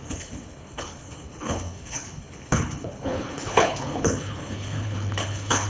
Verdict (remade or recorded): remade